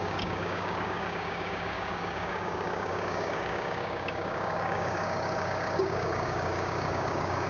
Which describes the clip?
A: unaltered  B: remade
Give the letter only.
B